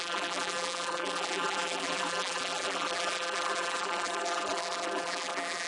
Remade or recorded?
remade